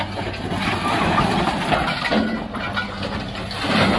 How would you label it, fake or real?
real